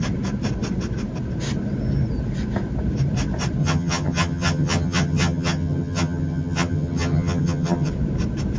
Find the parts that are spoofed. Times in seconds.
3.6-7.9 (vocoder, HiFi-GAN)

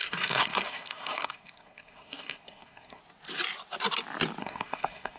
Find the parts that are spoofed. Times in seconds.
0.0-3.0 (codec, SNAC); 4.4-5.2